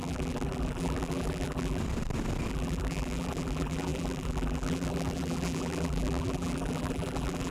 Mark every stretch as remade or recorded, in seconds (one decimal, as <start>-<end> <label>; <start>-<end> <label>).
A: 0.0-1.8 remade; 1.8-2.5 recorded; 2.5-7.5 remade